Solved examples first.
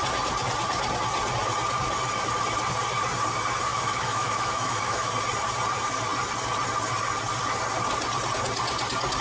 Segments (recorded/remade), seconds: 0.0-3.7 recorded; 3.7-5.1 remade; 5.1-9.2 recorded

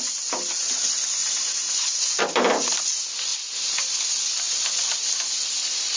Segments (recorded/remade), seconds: 0.0-6.0 recorded

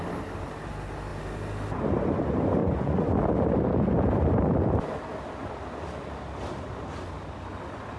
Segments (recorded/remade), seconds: 0.0-2.6 recorded; 2.6-3.1 remade; 3.1-8.0 recorded

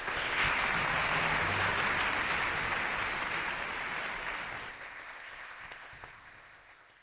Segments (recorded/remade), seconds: 0.0-0.5 remade; 0.5-4.7 recorded; 4.7-7.0 remade

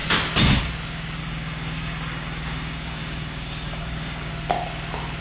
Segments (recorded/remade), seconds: 0.0-1.2 recorded; 1.2-4.3 remade; 4.3-5.2 recorded

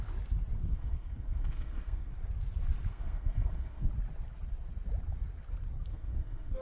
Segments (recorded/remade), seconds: 0.0-0.6 recorded; 0.6-2.1 remade; 2.1-2.9 recorded; 2.9-3.9 remade; 3.9-5.9 recorded; 5.9-6.6 remade

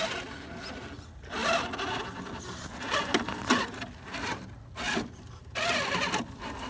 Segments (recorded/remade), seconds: 0.0-6.7 recorded